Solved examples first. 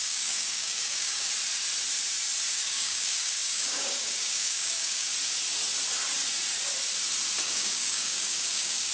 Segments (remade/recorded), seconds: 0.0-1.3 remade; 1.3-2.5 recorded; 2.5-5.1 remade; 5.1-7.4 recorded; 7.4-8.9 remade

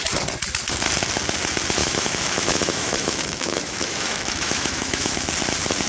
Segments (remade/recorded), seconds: 0.0-1.8 recorded; 1.8-5.3 remade; 5.3-5.9 recorded

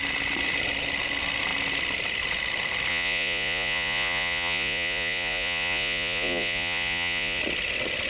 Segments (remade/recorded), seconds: 0.0-2.9 recorded; 2.9-7.4 remade; 7.4-8.1 recorded

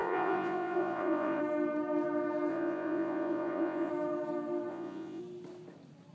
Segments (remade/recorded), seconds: 0.0-1.4 remade; 1.4-2.5 recorded; 2.5-3.9 remade; 3.9-4.7 recorded; 4.7-5.2 remade; 5.2-6.1 recorded

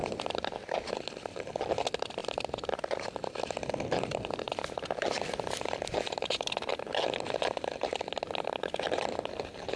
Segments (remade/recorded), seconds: 0.0-2.2 recorded; 2.2-6.2 remade; 6.2-9.8 recorded